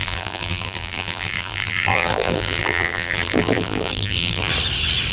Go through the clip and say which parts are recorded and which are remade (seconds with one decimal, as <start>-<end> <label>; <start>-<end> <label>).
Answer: 0.0-4.5 remade; 4.5-5.1 recorded